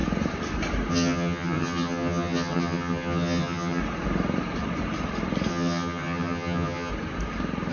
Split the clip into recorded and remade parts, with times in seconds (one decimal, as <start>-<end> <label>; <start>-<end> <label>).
0.0-0.9 recorded; 0.9-3.8 remade; 3.8-5.5 recorded; 5.5-6.9 remade; 6.9-7.7 recorded